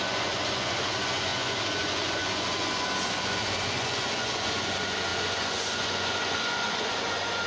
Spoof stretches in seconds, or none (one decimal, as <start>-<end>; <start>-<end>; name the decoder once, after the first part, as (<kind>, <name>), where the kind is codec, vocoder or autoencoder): 0.0-7.5 (vocoder, Vocos)